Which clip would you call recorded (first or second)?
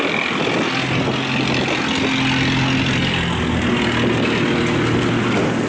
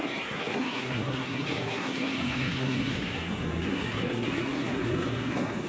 first